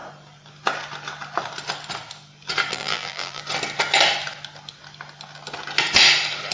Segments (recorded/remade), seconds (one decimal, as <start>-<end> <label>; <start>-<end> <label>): 0.0-2.7 recorded; 2.7-3.4 remade; 3.4-6.5 recorded